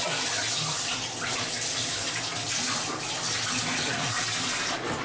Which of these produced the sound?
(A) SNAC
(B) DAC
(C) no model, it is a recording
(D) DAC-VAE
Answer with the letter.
C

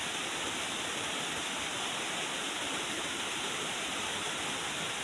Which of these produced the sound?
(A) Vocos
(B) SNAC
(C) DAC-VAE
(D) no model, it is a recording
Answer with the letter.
D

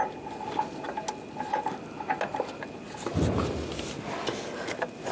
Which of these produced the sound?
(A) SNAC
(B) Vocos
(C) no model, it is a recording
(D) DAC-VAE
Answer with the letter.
C